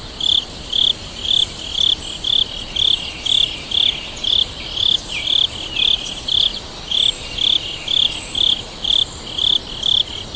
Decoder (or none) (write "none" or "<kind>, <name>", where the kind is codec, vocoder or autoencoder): none